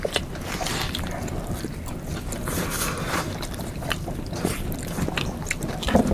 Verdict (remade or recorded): remade